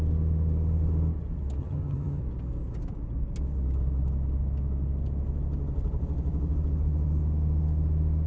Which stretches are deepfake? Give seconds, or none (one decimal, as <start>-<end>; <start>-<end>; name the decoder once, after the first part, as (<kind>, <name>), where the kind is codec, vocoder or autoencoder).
1.6-2.2 (vocoder, HiFi-GAN)